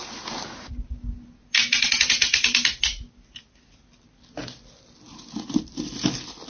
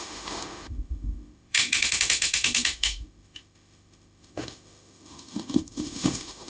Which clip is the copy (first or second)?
second